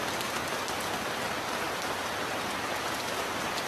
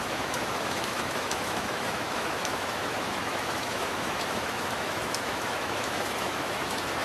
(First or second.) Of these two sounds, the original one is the first